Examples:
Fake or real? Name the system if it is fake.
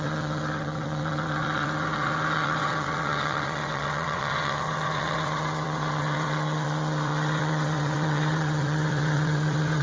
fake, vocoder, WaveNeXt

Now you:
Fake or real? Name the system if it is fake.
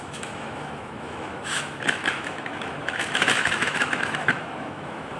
fake, autoencoder, DAC-VAE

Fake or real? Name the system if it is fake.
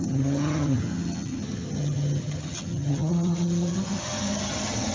fake, vocoder, HiFi-GAN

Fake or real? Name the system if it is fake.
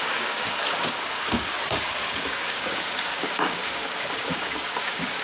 fake, codec, DAC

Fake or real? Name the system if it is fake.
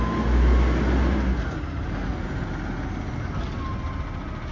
real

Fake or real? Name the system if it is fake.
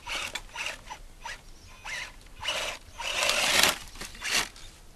real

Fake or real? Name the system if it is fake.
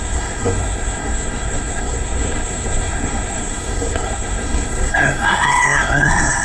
fake, codec, SNAC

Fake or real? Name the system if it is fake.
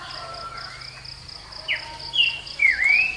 real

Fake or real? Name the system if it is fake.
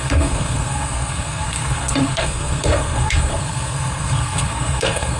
fake, codec, SNAC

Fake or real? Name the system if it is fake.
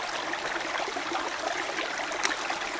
real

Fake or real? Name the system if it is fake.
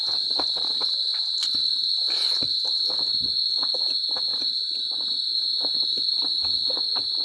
real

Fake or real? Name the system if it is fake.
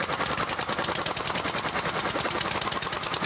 real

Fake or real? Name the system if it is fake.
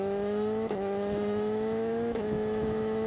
fake, autoencoder, DAC-VAE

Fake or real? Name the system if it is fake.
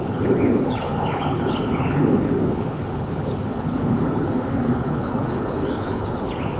fake, codec, HILCodec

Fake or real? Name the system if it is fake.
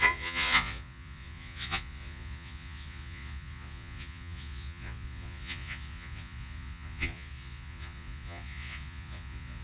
fake, vocoder, Vocos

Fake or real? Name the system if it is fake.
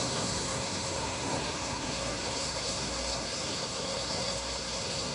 fake, codec, SNAC